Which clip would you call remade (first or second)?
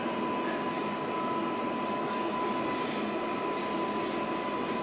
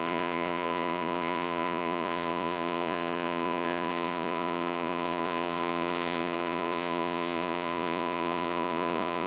second